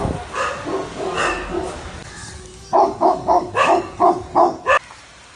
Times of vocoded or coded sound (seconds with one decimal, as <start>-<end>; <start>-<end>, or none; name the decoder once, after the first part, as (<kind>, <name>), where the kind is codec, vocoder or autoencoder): 0.9-4.1 (codec, DAC)